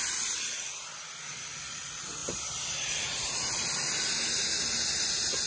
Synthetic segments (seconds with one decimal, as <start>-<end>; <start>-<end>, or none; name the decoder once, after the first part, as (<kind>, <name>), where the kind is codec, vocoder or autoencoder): 2.2-3.7 (vocoder, BigVGAN v2)